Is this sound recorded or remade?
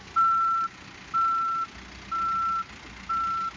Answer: recorded